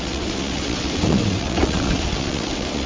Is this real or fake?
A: fake